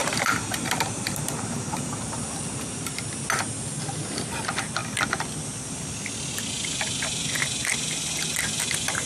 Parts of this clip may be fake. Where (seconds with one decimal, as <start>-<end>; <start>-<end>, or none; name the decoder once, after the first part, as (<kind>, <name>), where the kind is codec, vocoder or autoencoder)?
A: 0.0-2.9 (vocoder, BigVGAN v2)